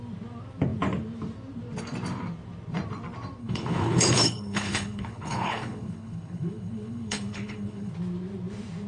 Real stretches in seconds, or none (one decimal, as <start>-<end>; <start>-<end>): 0.0-3.4; 7.9-8.9